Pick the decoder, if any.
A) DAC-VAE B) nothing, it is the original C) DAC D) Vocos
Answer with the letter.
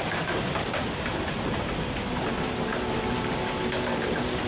B